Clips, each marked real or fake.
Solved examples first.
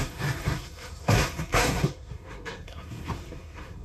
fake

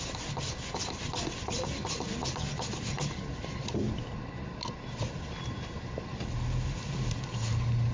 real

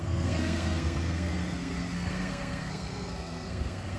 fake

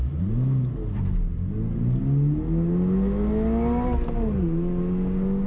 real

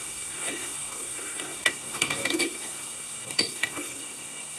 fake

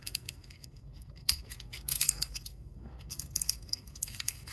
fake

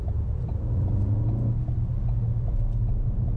real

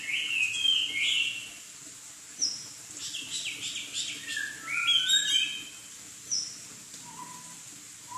real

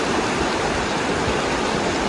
real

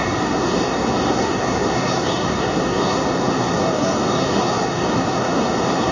fake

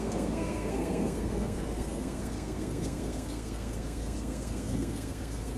fake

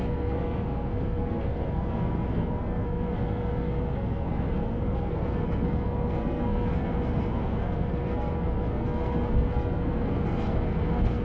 fake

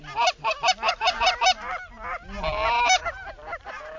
real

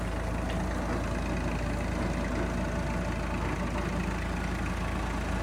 real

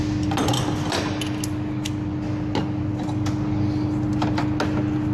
real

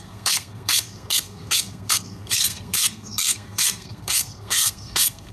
fake